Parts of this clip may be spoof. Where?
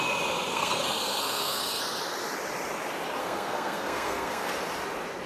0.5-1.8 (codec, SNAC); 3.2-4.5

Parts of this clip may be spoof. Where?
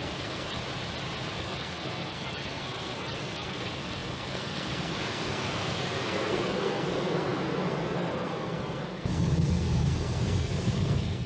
0.0-0.6 (codec, SNAC); 1.4-11.3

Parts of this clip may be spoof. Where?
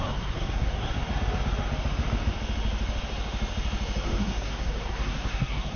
0.0-1.1 (codec, SNAC); 4.2-5.8